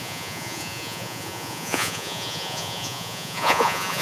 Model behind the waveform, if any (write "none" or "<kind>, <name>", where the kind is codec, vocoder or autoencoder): vocoder, Vocos